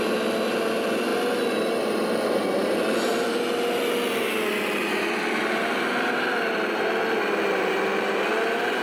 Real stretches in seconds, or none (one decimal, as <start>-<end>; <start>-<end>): 0.0-8.8